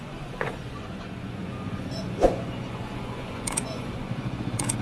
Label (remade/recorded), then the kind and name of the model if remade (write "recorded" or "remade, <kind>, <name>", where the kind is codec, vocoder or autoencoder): remade, vocoder, Vocos